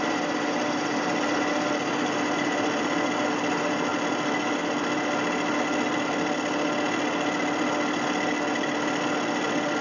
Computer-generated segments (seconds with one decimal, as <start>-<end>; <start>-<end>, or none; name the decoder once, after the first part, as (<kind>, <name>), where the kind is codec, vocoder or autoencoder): none

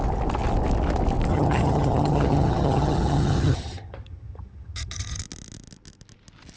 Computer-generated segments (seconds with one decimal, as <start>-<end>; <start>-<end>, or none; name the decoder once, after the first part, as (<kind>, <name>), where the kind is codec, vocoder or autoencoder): 1.3-5.2 (vocoder, HiFi-GAN)

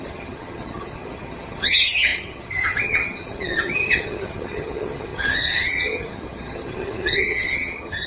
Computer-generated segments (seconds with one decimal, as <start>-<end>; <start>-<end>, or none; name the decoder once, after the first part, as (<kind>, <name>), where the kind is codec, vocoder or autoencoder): 0.0-8.1 (vocoder, HiFi-GAN)

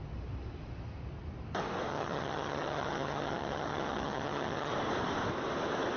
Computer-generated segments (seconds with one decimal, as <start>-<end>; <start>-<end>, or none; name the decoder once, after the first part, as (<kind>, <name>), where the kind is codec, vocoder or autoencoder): 1.9-4.7 (vocoder, HiFi-GAN)

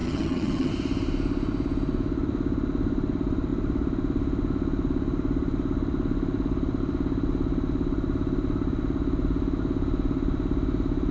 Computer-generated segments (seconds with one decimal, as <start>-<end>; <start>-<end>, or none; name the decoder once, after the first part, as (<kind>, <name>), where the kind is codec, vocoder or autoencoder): 0.0-0.7 (vocoder, HiFi-GAN)